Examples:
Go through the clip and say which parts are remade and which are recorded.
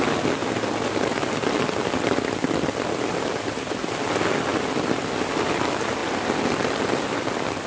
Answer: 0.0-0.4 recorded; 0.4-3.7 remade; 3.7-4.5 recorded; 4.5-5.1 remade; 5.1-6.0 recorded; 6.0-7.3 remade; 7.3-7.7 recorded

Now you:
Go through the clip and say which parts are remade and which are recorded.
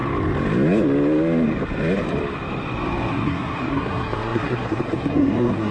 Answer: 0.0-3.1 recorded; 3.1-5.7 remade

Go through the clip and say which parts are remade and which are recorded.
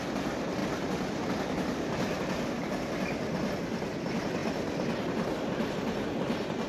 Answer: 0.0-6.7 recorded